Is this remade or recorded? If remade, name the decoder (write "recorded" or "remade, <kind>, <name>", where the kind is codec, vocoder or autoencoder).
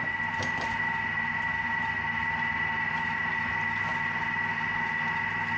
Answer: recorded